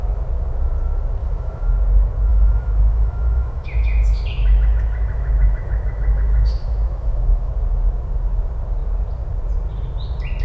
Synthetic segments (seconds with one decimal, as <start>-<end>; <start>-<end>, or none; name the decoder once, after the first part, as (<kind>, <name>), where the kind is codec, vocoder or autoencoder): 1.2-1.7 (autoencoder, DAC-VAE); 2.3-7.5